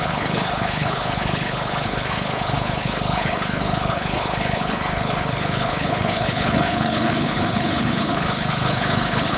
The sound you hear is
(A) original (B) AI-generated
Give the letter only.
B